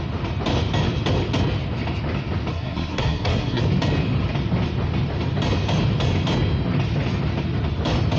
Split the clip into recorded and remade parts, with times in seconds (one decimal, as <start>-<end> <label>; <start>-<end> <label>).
0.0-2.5 recorded; 2.5-3.6 remade; 3.6-8.2 recorded